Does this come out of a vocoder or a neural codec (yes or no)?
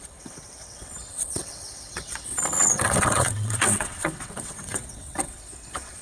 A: yes